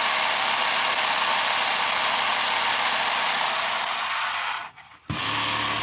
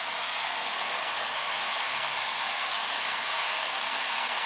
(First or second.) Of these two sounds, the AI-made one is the second